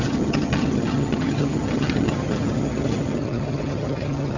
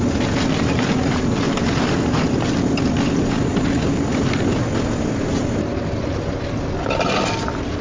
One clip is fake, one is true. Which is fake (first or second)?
first